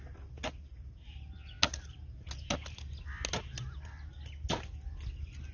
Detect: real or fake real